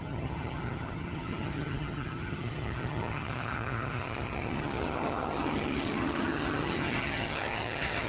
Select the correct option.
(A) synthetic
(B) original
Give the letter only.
A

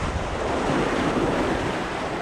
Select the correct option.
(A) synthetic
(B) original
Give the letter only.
A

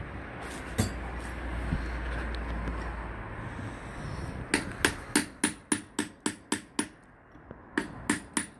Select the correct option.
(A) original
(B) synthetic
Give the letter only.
A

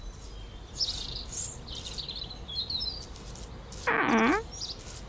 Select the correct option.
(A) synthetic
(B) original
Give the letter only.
B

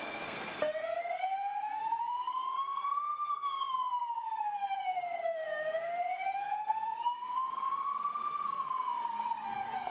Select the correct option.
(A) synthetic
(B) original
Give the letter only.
A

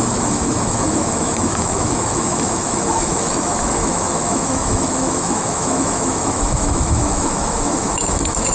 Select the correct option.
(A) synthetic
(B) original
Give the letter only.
A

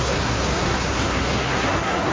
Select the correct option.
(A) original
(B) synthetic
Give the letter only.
B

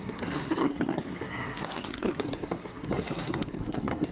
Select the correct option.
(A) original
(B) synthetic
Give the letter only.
B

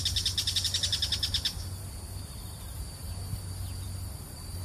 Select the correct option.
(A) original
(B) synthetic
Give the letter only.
A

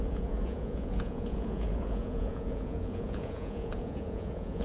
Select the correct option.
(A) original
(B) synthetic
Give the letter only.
B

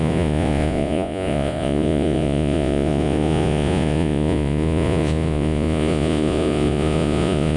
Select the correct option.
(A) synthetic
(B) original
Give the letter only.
A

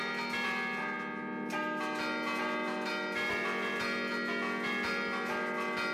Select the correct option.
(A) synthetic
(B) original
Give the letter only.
B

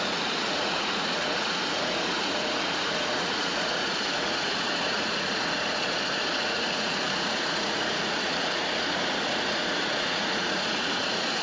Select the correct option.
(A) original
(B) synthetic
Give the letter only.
B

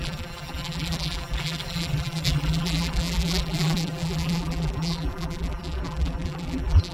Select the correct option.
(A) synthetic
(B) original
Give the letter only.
A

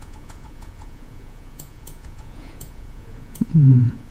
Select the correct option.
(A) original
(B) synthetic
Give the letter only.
B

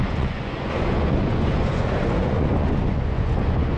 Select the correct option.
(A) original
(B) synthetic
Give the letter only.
B